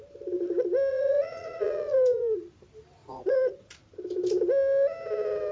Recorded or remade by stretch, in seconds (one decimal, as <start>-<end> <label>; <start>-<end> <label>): 0.0-0.9 recorded; 0.9-2.5 remade; 2.5-3.0 recorded; 3.0-3.7 remade; 3.7-5.5 recorded